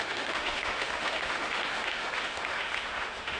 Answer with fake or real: fake